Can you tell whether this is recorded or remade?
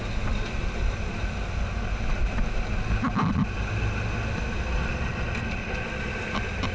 recorded